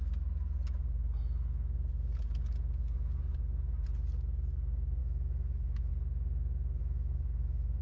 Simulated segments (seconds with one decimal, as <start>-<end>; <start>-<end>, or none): 5.0-5.9; 6.8-7.8